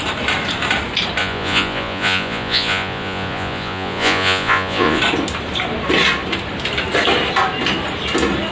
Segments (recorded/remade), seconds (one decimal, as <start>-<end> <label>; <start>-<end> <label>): 0.0-1.2 recorded; 1.2-5.0 remade; 5.0-8.5 recorded